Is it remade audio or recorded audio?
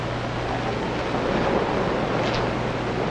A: recorded